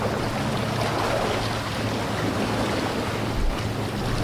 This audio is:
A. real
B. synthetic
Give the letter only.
A